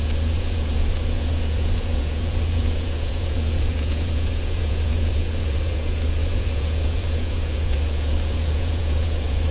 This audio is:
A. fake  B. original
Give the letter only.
A